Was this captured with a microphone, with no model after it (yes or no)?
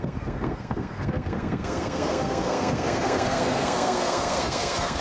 no